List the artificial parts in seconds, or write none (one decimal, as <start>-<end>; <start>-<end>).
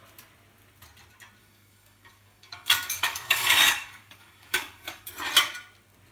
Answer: 1.4-5.1